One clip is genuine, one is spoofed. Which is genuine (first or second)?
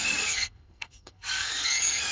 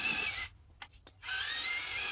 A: second